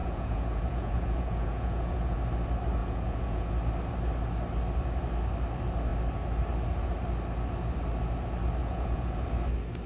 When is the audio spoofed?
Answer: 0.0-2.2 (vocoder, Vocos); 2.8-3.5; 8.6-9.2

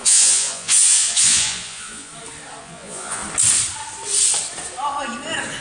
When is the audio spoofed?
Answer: 0.0-2.1 (vocoder, Vocos); 2.6-3.2